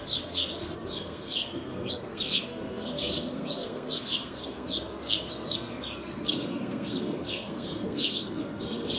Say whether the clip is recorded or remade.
remade